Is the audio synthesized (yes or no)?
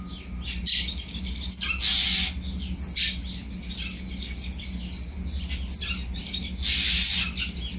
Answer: no